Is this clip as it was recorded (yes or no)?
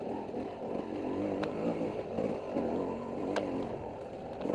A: yes